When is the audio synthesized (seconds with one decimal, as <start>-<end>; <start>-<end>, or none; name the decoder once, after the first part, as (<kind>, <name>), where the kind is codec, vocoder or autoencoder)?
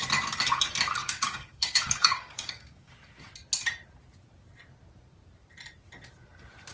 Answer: 1.0-2.9 (codec, DAC)